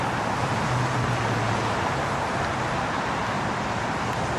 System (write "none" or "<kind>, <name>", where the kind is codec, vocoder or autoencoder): none